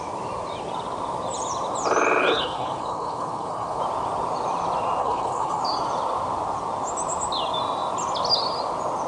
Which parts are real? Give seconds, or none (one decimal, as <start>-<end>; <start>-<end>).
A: 0.0-2.2; 3.8-5.0; 5.6-9.1